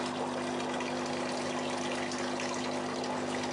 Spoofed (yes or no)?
no